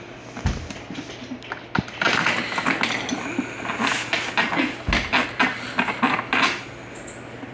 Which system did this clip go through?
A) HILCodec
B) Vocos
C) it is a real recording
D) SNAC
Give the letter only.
C